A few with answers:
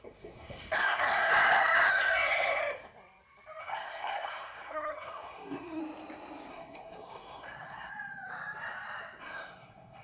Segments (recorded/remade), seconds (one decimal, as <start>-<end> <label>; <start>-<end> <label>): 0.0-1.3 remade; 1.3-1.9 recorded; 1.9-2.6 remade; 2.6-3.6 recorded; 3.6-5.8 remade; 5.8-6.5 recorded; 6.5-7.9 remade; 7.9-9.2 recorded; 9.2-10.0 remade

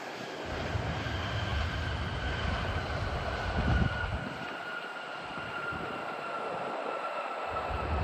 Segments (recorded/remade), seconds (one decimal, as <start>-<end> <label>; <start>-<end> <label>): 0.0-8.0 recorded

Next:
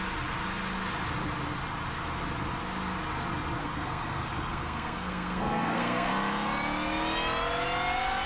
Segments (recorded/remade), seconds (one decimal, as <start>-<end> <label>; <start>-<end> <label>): 0.0-3.6 recorded; 3.6-6.1 remade; 6.1-8.3 recorded

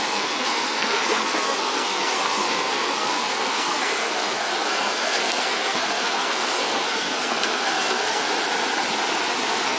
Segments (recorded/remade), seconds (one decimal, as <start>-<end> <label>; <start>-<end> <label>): 0.0-8.3 remade; 8.3-9.4 recorded; 9.4-9.8 remade

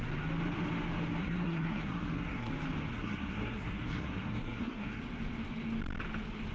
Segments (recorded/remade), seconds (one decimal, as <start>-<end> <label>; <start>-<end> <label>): 0.0-1.2 recorded; 1.2-2.5 remade; 2.5-2.9 recorded; 2.9-5.0 remade; 5.0-6.5 recorded

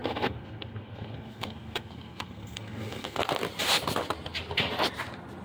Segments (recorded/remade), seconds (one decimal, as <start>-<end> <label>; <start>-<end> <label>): 0.0-3.2 remade; 3.2-5.4 recorded

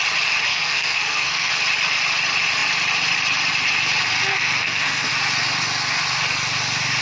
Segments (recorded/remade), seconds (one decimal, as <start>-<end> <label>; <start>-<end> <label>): 0.0-0.5 recorded; 0.5-1.5 remade; 1.5-4.3 recorded; 4.3-5.1 remade; 5.1-7.0 recorded